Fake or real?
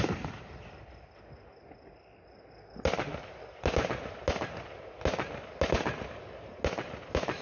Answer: real